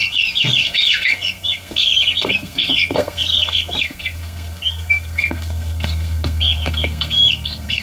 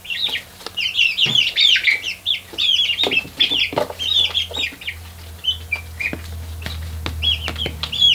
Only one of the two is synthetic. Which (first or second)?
first